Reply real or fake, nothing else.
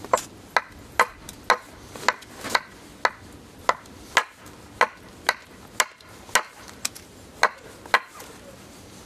real